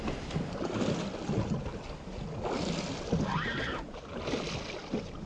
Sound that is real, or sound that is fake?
real